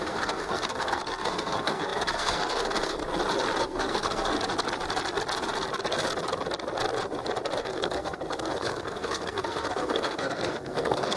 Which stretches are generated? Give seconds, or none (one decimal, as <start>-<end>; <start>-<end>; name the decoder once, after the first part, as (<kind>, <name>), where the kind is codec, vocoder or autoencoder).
0.0-3.0 (codec, SNAC); 3.6-4.3; 7.6-11.2